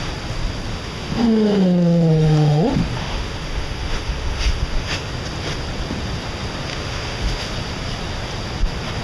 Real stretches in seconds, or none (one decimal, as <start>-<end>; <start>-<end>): 0.0-0.7; 5.1-6.7; 7.5-9.0